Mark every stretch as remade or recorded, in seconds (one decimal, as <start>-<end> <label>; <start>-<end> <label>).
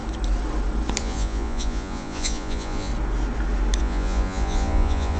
0.0-1.0 recorded; 1.0-2.9 remade; 2.9-3.8 recorded; 3.8-5.2 remade